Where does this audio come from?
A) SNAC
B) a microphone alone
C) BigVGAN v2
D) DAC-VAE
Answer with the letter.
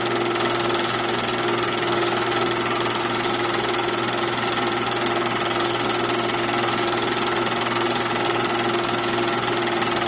B